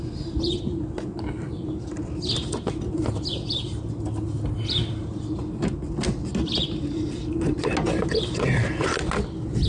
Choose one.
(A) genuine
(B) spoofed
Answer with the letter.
A